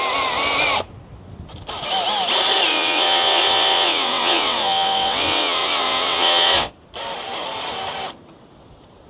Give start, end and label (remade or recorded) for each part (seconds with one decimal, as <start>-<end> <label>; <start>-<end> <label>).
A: 0.0-2.7 recorded; 2.7-6.7 remade; 6.7-9.1 recorded